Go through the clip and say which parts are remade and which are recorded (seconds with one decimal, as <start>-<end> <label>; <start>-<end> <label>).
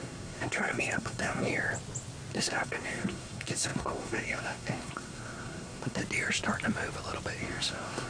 0.0-1.5 remade; 1.5-2.3 recorded; 2.3-6.0 remade; 6.0-7.4 recorded; 7.4-8.1 remade